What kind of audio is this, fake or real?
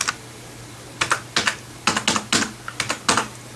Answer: real